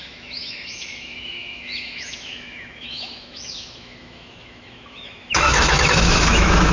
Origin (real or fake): fake